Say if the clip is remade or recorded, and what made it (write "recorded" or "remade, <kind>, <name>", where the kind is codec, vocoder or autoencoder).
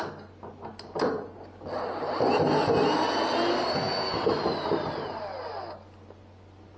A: recorded